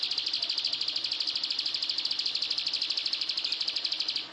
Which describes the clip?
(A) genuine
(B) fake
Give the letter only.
B